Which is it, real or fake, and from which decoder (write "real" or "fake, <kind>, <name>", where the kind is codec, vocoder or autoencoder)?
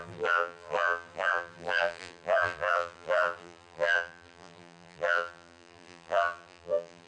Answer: fake, vocoder, BigVGAN v2